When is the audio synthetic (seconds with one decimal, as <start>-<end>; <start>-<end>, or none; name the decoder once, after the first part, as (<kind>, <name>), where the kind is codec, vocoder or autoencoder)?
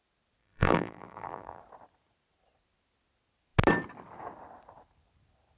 0.4-1.6 (vocoder, BigVGAN v2)